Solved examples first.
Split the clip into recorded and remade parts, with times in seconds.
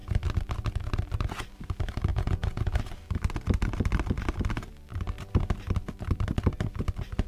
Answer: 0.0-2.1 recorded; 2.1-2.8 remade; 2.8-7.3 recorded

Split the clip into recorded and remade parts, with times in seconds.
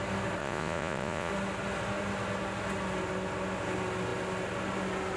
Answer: 0.0-0.4 recorded; 0.4-1.3 remade; 1.3-5.2 recorded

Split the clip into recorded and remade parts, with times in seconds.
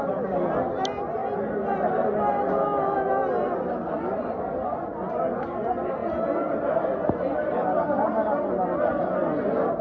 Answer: 0.0-9.8 recorded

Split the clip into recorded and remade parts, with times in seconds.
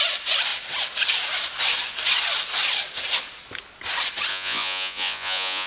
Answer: 0.0-4.3 recorded; 4.3-5.7 remade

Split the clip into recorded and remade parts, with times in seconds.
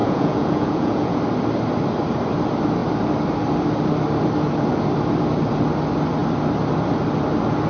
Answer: 0.0-1.2 remade; 1.2-7.7 recorded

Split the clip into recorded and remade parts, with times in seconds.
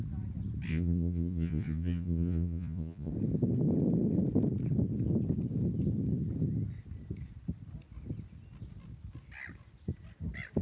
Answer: 0.0-0.7 recorded; 0.7-3.1 remade; 3.1-10.6 recorded